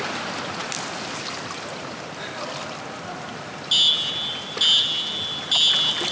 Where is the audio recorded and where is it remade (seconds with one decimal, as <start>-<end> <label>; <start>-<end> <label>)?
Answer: 0.0-6.1 recorded